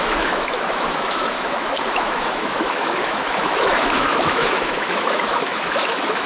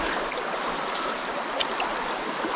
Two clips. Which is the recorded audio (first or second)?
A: second